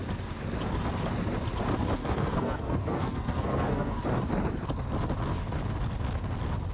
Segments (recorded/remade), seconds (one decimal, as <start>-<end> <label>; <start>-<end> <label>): 0.0-2.0 recorded; 2.0-4.0 remade; 4.0-6.7 recorded